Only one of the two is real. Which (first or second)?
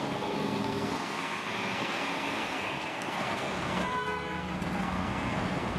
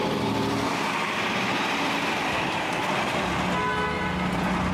second